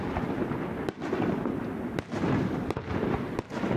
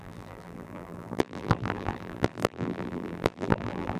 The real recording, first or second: first